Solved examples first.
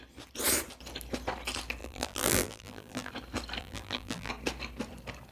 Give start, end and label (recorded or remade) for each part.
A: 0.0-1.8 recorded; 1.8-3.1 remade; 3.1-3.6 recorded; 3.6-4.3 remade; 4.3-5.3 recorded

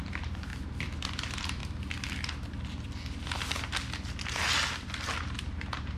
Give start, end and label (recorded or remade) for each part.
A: 0.0-0.5 remade; 0.5-1.0 recorded; 1.0-1.6 remade; 1.6-5.2 recorded; 5.2-6.0 remade

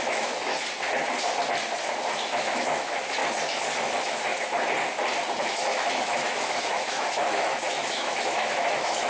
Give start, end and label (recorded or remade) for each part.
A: 0.0-0.5 remade; 0.5-2.1 recorded; 2.1-3.2 remade; 3.2-3.8 recorded; 3.8-4.3 remade; 4.3-5.4 recorded; 5.4-9.1 remade